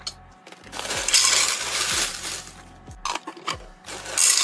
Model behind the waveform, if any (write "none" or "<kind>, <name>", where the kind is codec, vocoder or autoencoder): none